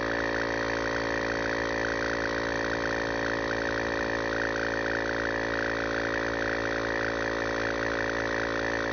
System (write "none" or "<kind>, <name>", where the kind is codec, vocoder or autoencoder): none